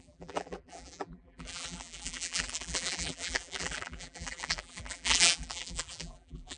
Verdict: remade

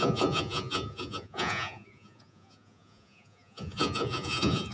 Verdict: remade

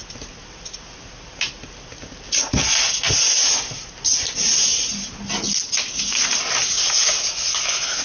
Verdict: recorded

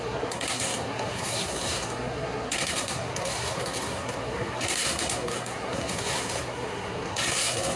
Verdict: remade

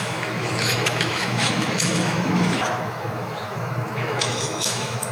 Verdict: remade